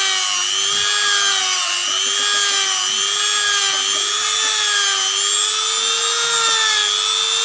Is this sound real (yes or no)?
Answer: yes